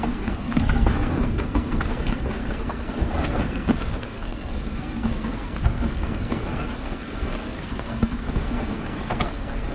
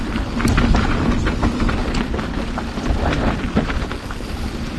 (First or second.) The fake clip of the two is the first